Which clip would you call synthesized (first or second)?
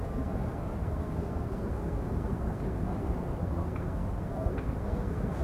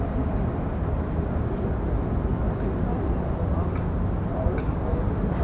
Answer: first